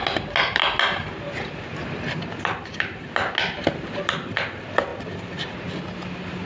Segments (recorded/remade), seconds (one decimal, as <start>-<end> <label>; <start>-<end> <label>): 0.0-6.5 recorded